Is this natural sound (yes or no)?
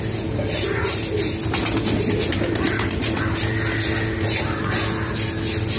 yes